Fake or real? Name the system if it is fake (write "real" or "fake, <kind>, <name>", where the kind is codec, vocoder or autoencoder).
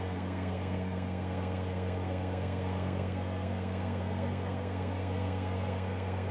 fake, codec, SNAC